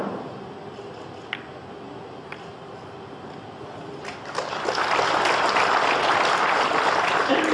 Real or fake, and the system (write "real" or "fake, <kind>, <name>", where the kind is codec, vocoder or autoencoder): real